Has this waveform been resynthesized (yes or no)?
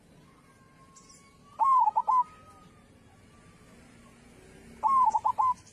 no